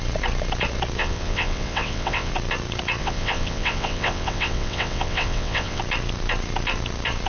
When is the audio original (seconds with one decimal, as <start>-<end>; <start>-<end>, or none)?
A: 0.0-1.0; 2.3-3.0; 5.8-7.3